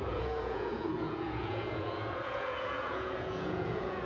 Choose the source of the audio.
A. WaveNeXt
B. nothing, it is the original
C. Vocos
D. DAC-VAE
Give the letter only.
C